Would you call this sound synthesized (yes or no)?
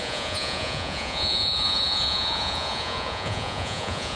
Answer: yes